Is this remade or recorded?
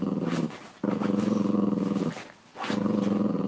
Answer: recorded